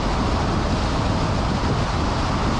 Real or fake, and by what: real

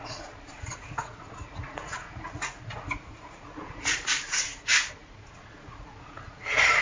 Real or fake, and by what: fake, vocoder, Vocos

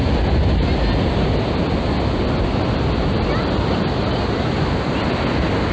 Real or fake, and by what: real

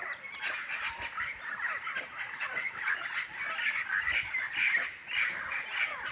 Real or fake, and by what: real